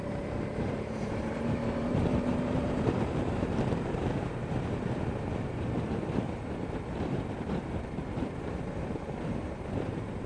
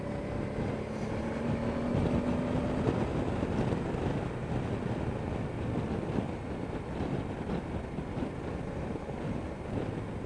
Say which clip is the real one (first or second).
second